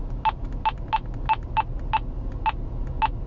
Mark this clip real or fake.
real